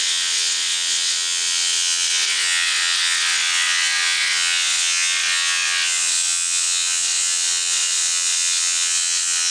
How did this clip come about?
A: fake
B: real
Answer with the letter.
A